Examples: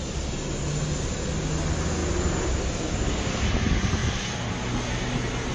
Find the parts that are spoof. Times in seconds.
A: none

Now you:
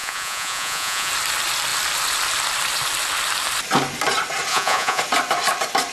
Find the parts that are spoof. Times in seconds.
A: 0.0-1.1 (vocoder, Vocos); 4.5-5.0